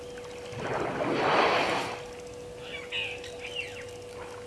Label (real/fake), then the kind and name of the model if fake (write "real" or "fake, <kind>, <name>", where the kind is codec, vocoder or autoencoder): real